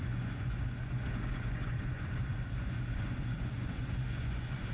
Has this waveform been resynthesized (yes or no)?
yes